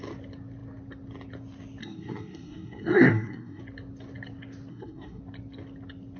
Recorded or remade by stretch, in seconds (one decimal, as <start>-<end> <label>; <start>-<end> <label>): 0.0-1.8 recorded; 1.8-3.6 remade; 3.6-4.7 recorded; 4.7-5.2 remade; 5.2-6.2 recorded